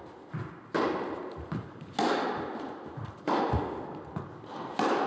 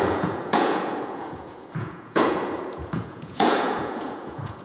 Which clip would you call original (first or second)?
first